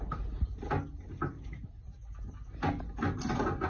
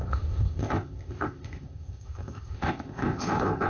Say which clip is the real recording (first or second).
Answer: first